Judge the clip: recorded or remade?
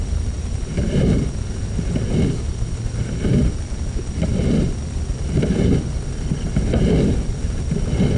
recorded